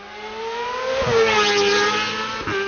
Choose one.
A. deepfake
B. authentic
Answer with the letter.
B